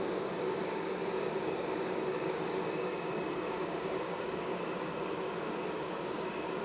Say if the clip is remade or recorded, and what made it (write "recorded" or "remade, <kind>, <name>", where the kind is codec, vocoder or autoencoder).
remade, codec, DAC